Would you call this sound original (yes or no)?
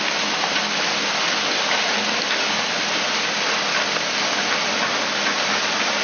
yes